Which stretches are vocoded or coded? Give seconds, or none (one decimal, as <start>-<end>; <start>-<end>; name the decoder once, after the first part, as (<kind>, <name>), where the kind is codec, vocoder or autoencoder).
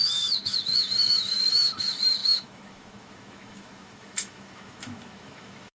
0.0-5.8 (autoencoder, DAC-VAE)